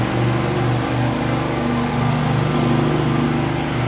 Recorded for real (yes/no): yes